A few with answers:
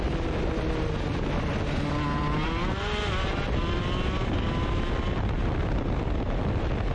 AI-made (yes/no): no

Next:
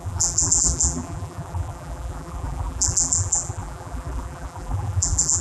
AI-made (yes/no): yes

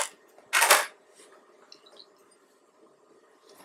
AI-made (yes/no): no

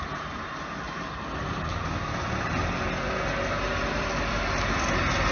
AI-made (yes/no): no